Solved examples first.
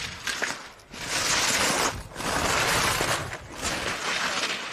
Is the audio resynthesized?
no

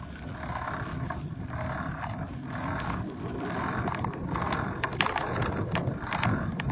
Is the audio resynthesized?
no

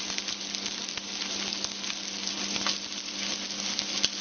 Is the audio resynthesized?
no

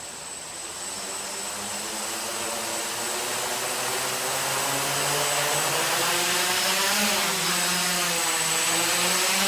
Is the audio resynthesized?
no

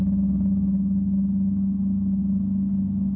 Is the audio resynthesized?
no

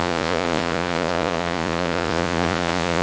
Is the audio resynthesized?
yes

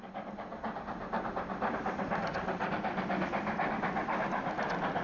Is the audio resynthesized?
no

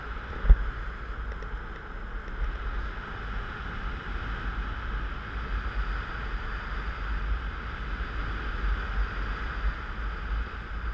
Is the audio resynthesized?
no